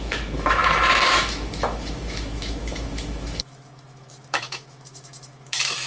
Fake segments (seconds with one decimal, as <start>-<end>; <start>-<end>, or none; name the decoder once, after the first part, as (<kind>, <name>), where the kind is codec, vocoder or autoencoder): 0.0-5.9 (autoencoder, DAC-VAE)